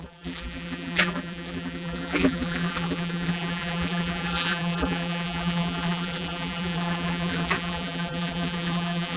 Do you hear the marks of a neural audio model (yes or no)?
yes